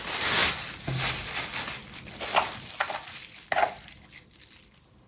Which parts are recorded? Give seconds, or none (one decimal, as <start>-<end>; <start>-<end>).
0.0-5.1